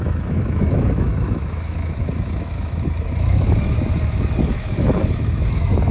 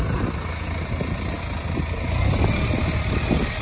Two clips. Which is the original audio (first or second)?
second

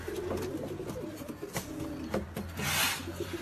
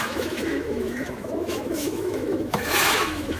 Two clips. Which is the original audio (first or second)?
first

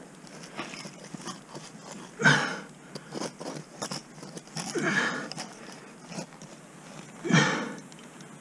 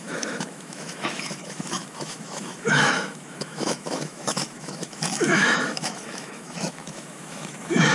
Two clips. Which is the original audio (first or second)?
first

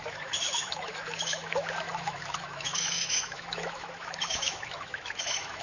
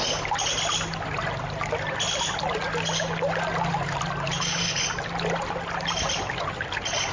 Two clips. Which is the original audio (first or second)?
second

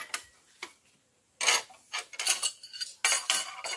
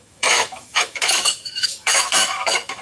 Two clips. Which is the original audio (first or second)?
first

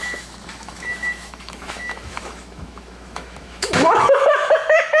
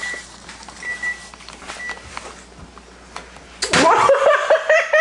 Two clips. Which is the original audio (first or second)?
second